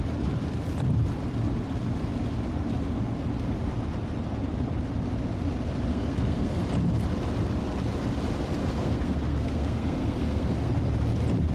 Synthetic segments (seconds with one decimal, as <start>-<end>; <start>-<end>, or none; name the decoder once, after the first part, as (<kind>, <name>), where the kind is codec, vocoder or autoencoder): 5.9-6.6 (codec, SNAC); 8.6-10.7